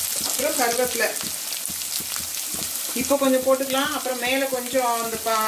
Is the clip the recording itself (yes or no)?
yes